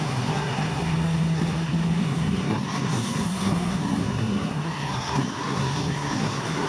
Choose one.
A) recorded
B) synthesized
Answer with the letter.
B